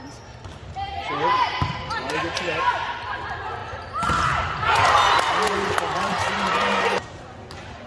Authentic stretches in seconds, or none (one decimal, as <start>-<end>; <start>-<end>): 0.0-0.6; 2.1-3.6; 7.2-7.9